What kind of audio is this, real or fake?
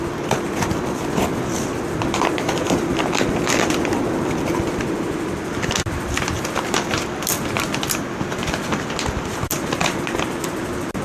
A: real